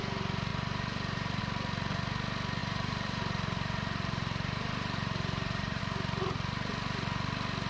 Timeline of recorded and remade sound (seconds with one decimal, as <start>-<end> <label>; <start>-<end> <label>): 0.0-0.5 recorded; 0.5-1.4 remade; 1.4-2.6 recorded; 2.6-5.8 remade; 5.8-7.7 recorded